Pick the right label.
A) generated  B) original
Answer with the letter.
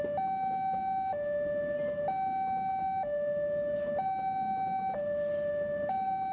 B